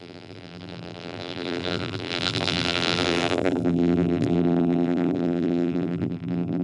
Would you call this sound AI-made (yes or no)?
yes